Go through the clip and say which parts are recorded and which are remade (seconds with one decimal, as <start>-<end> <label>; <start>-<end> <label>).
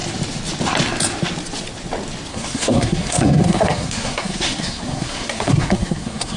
0.0-2.3 recorded; 2.3-6.4 remade